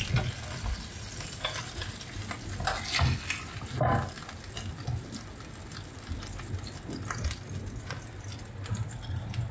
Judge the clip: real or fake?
real